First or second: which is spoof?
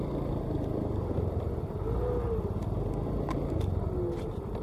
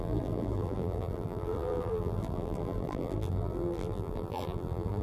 second